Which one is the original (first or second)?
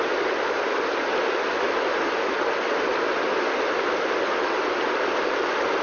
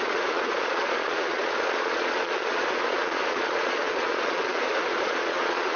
first